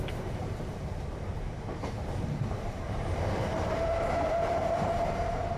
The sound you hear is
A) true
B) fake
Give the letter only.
B